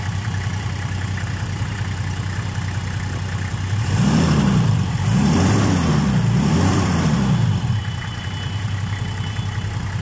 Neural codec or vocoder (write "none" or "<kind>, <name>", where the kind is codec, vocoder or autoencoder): vocoder, BigVGAN v2